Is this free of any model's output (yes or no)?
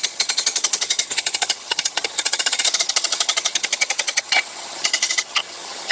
no